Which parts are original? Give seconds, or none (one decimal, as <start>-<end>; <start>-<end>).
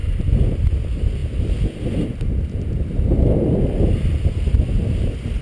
0.0-5.4